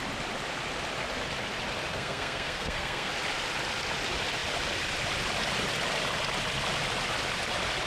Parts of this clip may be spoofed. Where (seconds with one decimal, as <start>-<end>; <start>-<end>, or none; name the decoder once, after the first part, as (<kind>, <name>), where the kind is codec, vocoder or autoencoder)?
1.9-3.1 (codec, SNAC)